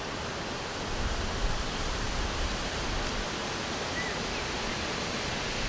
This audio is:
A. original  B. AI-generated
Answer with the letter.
A